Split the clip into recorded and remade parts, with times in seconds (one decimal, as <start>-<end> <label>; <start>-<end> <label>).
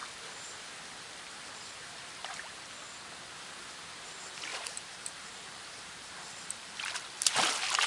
0.0-4.5 recorded; 4.5-6.7 remade; 6.7-7.9 recorded